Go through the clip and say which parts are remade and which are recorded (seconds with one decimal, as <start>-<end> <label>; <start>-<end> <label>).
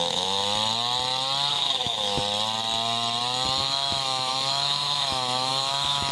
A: 0.0-0.4 remade; 0.4-1.5 recorded; 1.5-2.2 remade; 2.2-3.6 recorded; 3.6-6.1 remade